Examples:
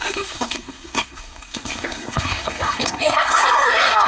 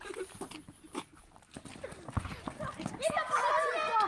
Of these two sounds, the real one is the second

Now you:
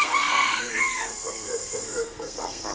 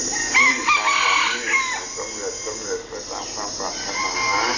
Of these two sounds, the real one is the second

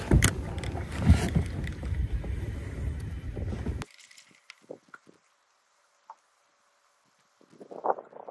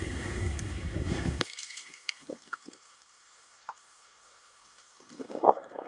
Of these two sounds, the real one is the first